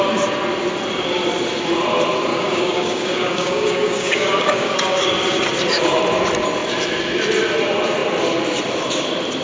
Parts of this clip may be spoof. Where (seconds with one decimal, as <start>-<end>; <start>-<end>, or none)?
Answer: 2.3-5.1